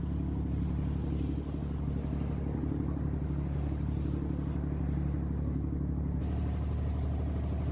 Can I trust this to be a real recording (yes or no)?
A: yes